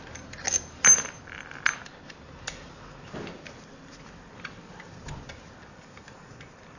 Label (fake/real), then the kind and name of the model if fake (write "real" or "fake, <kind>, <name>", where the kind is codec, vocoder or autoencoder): real